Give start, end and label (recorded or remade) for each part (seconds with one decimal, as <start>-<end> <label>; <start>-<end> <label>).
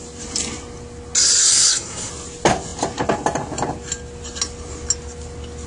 0.0-1.4 recorded; 1.4-2.1 remade; 2.1-5.7 recorded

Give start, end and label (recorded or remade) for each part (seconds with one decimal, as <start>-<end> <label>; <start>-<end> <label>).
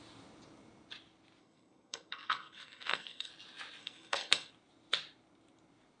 0.0-1.4 recorded; 1.4-3.3 remade; 3.3-3.8 recorded; 3.8-4.5 remade; 4.5-6.0 recorded